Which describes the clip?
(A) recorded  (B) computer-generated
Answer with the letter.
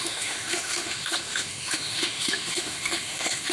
B